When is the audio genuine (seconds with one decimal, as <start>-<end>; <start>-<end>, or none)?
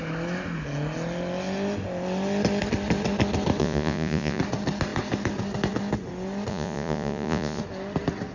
0.0-3.6; 4.4-6.5; 7.6-8.3